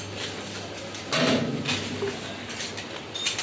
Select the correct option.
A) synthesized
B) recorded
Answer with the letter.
B